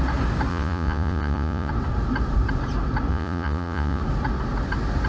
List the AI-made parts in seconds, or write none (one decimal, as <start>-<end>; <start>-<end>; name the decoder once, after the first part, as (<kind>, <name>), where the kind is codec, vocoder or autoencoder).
0.5-1.7 (vocoder, Vocos); 3.1-4.0